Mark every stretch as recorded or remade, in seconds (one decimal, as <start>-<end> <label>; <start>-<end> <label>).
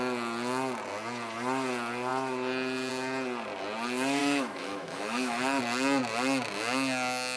0.0-4.2 recorded; 4.2-5.6 remade; 5.6-7.4 recorded